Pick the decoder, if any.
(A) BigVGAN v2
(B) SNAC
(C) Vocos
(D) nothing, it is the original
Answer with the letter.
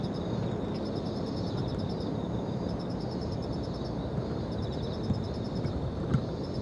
D